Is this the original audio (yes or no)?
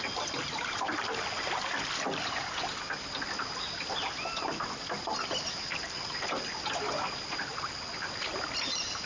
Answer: yes